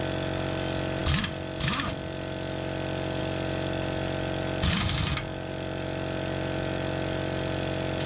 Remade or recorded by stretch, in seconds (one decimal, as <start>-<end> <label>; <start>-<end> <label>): 0.0-8.1 recorded